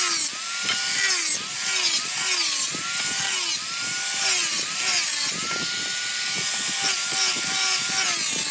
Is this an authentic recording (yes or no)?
yes